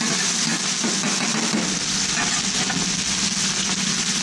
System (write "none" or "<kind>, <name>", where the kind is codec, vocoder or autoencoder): none